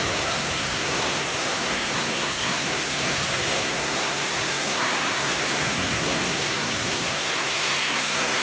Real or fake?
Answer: fake